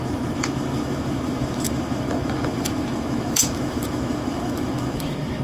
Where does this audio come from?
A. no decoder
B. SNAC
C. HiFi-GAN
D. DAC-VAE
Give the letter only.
D